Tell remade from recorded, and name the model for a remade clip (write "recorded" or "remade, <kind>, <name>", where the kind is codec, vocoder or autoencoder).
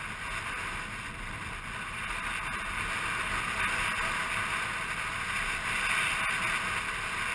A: recorded